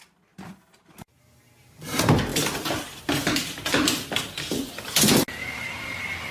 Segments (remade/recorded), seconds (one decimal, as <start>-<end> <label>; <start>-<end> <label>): 0.0-2.3 recorded; 2.3-4.2 remade; 4.2-6.3 recorded